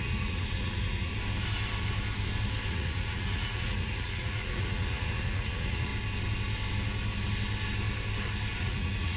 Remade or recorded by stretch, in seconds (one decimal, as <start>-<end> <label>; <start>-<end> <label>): 0.0-1.1 remade; 1.1-2.7 recorded; 2.7-5.9 remade; 5.9-8.6 recorded; 8.6-9.2 remade